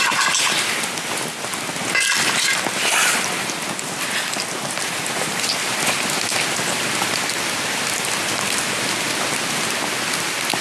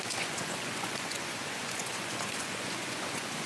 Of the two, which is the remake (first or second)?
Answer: second